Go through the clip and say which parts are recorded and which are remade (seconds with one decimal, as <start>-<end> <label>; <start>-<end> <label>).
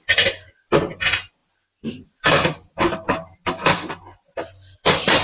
0.0-5.2 recorded